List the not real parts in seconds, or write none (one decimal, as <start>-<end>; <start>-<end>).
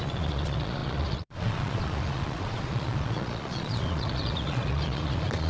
0.0-5.5